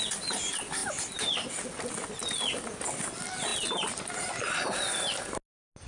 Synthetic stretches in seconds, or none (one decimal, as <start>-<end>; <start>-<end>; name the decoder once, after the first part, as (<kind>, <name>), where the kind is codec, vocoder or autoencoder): 0.8-1.5 (vocoder, BigVGAN v2)